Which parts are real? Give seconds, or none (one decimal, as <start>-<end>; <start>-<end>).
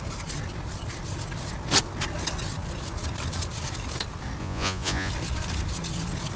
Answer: 0.0-4.4; 5.1-6.4